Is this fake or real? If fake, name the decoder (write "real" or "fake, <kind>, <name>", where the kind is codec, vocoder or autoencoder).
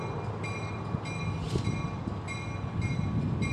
real